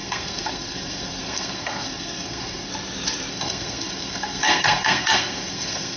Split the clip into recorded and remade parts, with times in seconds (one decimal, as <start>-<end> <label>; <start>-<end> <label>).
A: 0.0-2.7 remade; 2.7-3.3 recorded; 3.3-6.0 remade